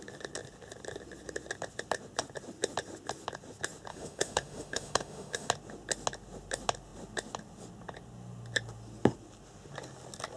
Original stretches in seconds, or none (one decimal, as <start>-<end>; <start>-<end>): 0.0-3.9; 5.5-10.4